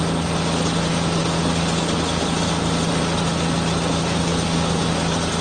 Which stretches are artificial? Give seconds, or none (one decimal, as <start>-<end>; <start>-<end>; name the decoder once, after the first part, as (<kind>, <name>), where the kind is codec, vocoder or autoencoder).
none